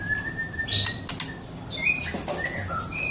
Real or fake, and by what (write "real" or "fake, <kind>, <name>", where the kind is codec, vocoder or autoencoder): real